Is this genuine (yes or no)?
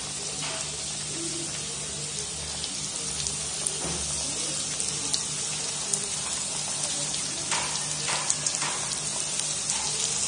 yes